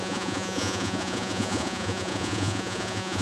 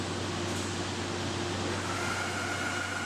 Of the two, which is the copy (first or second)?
first